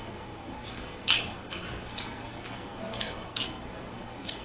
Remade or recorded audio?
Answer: remade